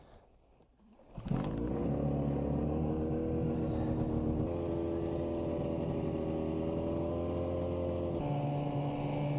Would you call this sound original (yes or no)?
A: yes